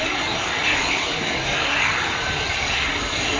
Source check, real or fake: fake